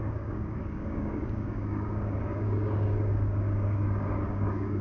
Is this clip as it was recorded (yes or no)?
no